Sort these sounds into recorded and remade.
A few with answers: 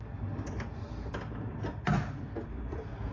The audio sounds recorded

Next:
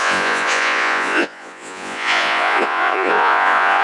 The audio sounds remade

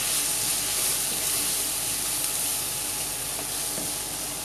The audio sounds recorded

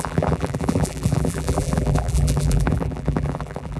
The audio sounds remade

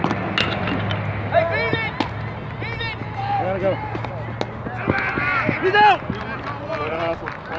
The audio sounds recorded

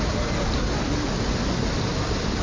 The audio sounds recorded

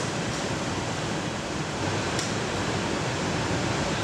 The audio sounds remade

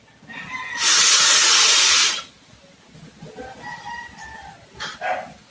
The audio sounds recorded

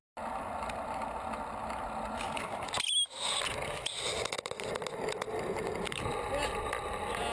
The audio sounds recorded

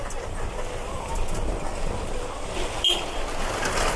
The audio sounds recorded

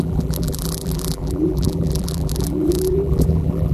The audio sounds remade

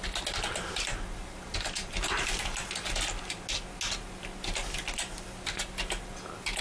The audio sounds recorded